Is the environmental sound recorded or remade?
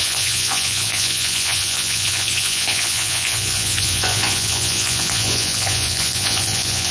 remade